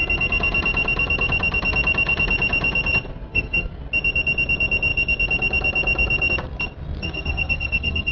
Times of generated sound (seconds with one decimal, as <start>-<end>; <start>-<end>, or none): 3.3-3.8; 7.0-8.1